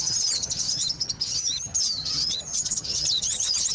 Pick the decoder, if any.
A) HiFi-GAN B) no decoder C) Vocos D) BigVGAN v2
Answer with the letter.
A